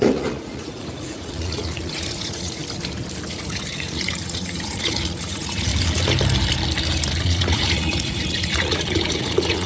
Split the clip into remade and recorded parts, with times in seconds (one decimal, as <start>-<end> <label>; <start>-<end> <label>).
0.0-2.6 remade; 2.6-3.3 recorded; 3.3-5.7 remade; 5.7-7.2 recorded; 7.2-9.7 remade